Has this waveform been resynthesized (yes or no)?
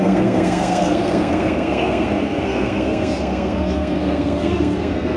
yes